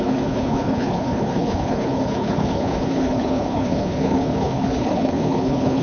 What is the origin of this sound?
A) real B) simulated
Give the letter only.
B